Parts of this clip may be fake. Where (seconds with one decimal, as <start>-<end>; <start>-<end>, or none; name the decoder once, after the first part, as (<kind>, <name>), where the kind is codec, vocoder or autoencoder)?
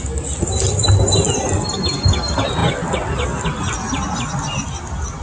none